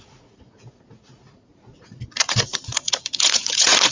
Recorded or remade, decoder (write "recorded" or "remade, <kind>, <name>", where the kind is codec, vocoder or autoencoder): remade, vocoder, Vocos